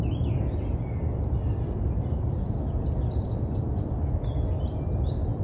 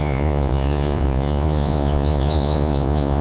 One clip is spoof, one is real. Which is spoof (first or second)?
second